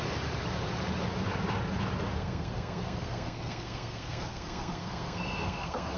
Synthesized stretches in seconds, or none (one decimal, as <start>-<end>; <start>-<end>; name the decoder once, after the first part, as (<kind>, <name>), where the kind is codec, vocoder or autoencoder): 2.2-6.0 (codec, SNAC)